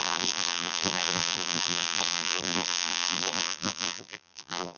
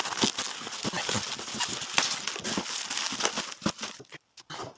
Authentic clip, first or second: second